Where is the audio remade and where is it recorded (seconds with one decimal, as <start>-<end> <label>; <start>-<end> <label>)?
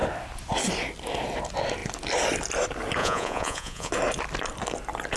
0.0-3.0 recorded; 3.0-3.9 remade; 3.9-5.2 recorded